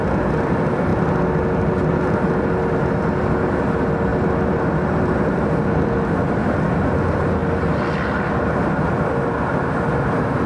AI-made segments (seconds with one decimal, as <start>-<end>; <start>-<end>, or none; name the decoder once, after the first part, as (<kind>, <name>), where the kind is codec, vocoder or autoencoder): none